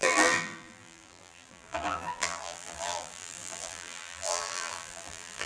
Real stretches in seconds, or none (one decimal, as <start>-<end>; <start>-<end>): none